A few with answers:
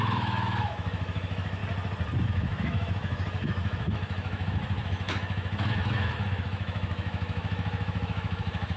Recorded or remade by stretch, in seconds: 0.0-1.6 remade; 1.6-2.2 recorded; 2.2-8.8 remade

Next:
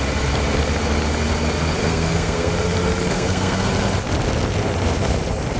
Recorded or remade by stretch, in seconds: 0.0-1.8 recorded; 1.8-2.5 remade; 2.5-3.1 recorded; 3.1-3.7 remade; 3.7-5.6 recorded

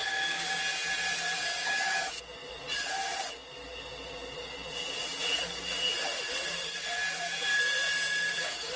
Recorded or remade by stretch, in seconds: 0.0-0.6 remade; 0.6-1.5 recorded; 1.5-2.2 remade; 2.2-8.8 recorded

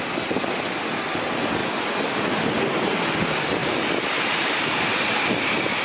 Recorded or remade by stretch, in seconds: 0.0-5.8 recorded